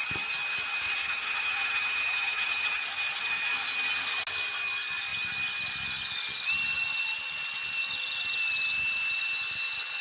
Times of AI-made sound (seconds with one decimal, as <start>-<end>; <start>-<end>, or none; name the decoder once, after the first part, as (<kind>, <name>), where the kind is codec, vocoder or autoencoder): 1.0-2.8 (vocoder, HiFi-GAN)